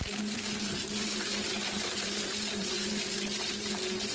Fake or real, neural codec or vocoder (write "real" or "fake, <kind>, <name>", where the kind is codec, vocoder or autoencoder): fake, vocoder, BigVGAN v2